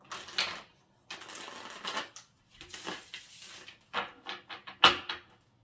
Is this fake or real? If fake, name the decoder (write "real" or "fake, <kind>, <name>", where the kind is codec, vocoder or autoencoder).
real